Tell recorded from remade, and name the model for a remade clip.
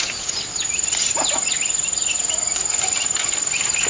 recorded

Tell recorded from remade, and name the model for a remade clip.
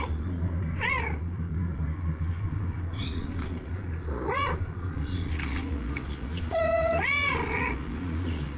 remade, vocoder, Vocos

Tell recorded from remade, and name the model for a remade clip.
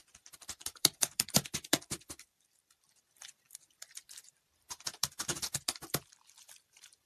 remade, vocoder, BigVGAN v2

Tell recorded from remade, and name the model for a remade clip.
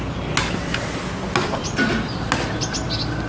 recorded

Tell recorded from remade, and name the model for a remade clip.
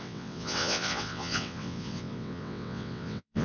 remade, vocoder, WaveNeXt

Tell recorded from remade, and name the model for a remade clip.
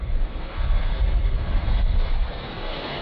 remade, codec, SNAC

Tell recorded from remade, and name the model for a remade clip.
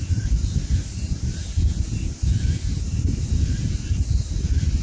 recorded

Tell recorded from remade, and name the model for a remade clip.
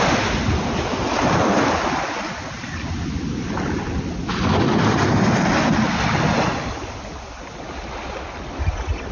recorded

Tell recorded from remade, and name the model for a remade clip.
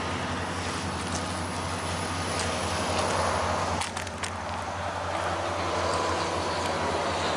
recorded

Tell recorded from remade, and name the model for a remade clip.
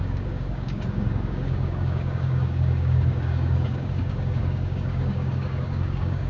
remade, codec, DAC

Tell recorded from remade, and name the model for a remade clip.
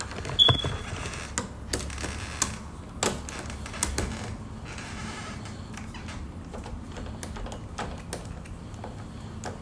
recorded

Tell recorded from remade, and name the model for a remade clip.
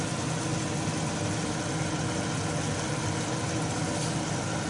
recorded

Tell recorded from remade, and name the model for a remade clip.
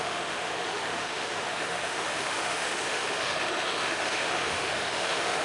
remade, autoencoder, DAC-VAE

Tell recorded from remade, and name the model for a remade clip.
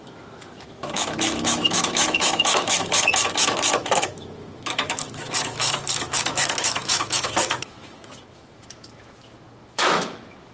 remade, autoencoder, DAC-VAE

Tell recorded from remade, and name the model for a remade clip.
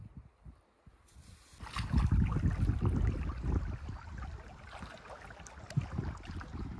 recorded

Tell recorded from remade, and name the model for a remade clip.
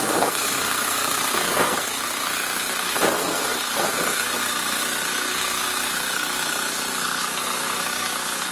remade, codec, SNAC